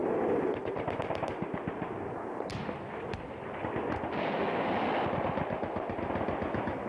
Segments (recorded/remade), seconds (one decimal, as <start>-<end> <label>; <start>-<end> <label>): 0.0-6.9 recorded